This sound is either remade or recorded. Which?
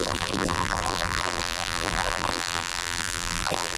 remade